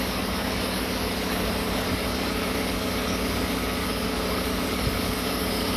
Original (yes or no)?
no